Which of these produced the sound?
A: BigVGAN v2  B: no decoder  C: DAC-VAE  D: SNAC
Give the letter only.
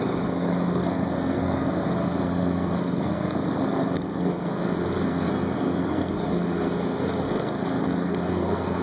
D